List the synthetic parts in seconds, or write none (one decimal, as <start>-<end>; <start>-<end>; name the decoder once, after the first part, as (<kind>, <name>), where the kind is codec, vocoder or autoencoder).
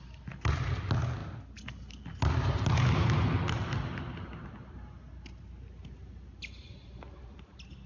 none